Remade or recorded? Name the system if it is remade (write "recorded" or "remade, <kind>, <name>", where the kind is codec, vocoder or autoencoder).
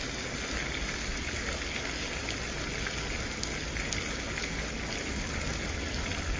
recorded